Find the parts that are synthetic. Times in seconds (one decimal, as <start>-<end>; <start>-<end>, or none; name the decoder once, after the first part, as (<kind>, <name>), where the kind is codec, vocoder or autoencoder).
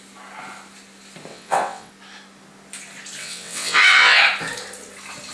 1.3-1.9 (vocoder, WaveNeXt); 3.2-4.2